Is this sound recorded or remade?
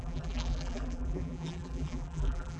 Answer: remade